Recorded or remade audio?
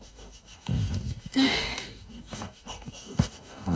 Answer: remade